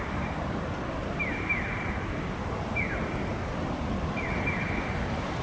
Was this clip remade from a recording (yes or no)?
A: yes